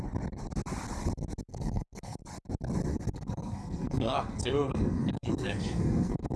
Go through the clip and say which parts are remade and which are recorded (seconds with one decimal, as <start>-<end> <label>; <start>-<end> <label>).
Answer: 0.0-1.5 recorded; 1.5-2.2 remade; 2.2-2.9 recorded; 2.9-6.4 remade